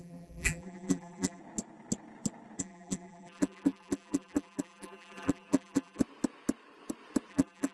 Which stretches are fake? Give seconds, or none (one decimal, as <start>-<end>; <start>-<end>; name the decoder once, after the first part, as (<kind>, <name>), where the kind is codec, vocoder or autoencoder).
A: 0.0-1.4 (vocoder, BigVGAN v2); 2.6-6.0; 7.3-7.7